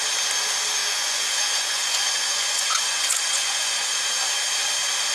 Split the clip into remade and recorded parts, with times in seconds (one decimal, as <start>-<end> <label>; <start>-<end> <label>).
0.0-0.8 recorded; 0.8-3.9 remade; 3.9-5.1 recorded